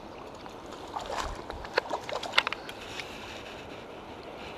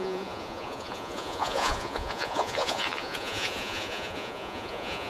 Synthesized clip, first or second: second